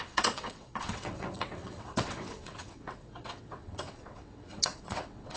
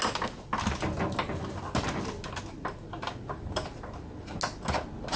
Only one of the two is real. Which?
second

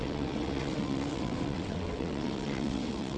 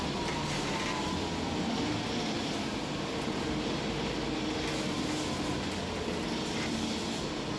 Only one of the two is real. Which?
second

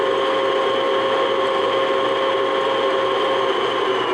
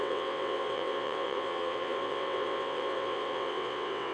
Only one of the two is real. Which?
first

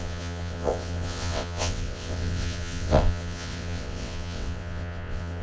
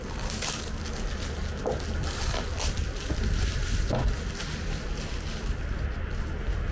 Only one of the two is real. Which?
second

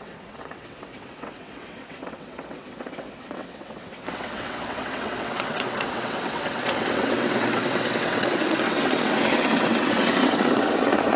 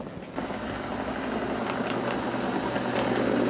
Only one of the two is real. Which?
second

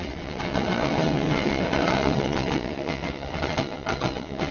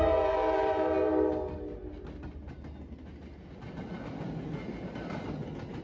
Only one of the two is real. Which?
second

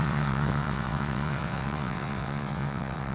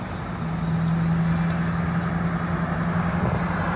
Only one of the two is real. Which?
second